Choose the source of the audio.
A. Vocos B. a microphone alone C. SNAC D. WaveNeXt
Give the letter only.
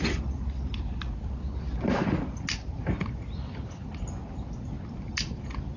B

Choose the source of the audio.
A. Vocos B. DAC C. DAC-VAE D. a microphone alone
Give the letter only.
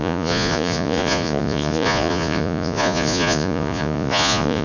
A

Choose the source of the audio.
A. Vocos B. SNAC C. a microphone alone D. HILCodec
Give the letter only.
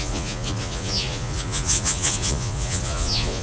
A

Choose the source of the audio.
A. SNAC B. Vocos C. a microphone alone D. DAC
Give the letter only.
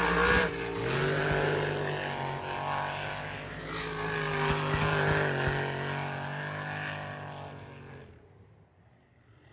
C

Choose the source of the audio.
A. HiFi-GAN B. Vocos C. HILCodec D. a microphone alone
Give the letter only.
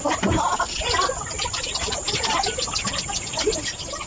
D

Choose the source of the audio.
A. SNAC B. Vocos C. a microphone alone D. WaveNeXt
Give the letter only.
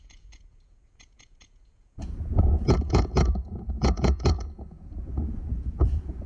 B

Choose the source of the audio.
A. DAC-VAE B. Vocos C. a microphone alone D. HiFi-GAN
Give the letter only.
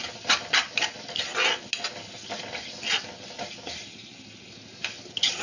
C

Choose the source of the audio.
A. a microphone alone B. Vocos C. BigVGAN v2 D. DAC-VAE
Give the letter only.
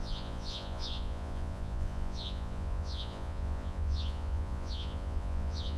B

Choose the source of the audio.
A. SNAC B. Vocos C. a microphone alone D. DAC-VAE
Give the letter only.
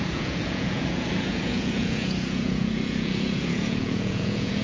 B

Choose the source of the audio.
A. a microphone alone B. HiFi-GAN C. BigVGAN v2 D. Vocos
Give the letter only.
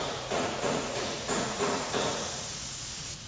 D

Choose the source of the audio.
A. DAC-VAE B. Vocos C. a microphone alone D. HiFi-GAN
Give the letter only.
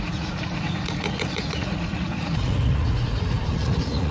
B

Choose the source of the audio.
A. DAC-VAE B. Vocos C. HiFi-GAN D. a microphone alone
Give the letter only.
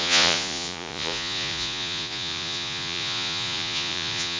B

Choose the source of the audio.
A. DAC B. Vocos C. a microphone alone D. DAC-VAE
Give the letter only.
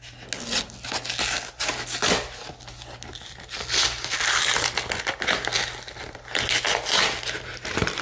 C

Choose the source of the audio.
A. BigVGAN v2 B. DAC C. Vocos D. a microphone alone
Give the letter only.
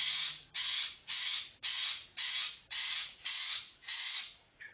C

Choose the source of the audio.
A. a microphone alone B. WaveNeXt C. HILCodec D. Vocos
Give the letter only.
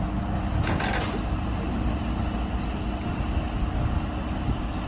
A